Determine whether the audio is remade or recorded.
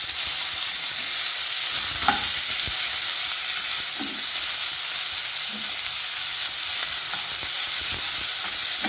recorded